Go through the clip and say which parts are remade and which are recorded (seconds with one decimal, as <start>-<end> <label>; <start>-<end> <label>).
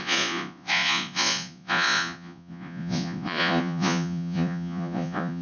0.0-5.4 remade